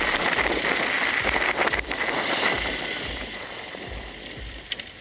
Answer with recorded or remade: recorded